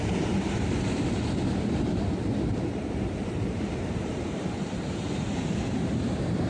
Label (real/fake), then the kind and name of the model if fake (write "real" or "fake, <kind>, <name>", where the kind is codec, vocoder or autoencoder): fake, vocoder, BigVGAN v2